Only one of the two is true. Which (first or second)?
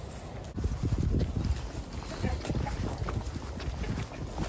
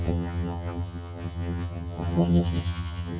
first